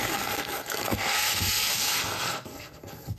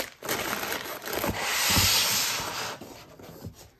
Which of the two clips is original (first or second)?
second